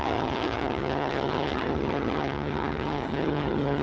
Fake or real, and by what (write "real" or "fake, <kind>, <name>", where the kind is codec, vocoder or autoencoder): fake, vocoder, HiFi-GAN